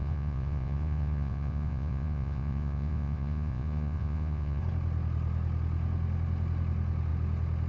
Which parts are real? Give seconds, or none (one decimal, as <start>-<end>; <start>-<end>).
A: 4.6-7.7